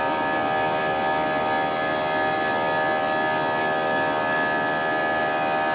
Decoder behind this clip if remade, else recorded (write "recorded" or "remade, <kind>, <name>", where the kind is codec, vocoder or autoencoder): recorded